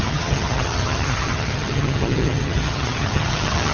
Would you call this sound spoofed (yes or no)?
yes